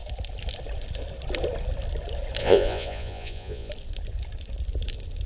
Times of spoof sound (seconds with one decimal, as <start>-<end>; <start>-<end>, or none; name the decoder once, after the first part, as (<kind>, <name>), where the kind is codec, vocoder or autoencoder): 2.4-3.7 (vocoder, Vocos)